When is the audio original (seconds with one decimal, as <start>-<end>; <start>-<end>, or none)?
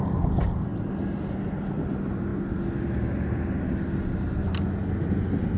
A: 0.0-5.6